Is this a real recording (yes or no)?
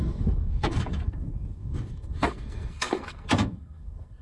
no